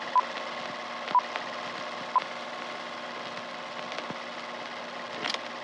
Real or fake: real